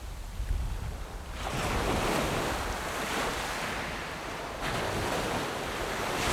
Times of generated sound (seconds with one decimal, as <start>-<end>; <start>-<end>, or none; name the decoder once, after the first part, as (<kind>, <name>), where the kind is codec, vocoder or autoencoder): none